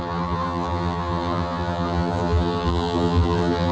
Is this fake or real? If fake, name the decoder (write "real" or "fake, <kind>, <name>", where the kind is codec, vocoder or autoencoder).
fake, vocoder, BigVGAN v2